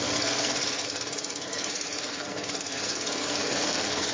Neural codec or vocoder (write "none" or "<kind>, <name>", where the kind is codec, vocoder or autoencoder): codec, SNAC